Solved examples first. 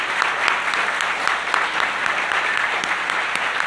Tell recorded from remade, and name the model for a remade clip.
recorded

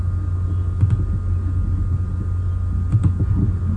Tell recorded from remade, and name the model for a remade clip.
recorded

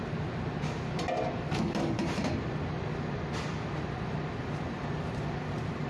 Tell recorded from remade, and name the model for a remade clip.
recorded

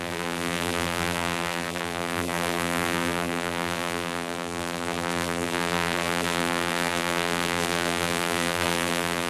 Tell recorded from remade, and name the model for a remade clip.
remade, vocoder, BigVGAN v2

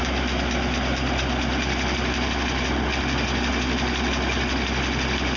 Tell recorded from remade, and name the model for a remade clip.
recorded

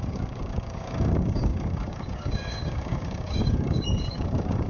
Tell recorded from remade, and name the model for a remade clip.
remade, codec, DAC